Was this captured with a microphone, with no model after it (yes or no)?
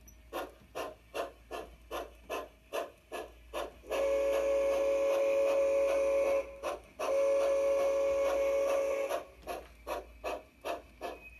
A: yes